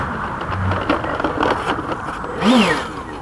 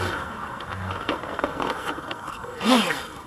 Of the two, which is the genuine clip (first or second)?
first